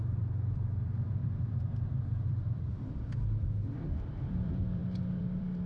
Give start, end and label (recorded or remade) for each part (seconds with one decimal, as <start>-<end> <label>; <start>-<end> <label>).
0.0-5.7 remade

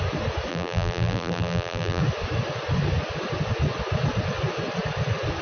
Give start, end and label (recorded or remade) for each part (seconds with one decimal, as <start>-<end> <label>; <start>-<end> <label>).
0.0-0.5 recorded; 0.5-2.0 remade; 2.0-5.4 recorded